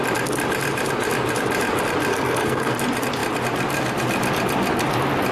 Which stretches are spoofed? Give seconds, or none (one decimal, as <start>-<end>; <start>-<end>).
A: 2.1-2.8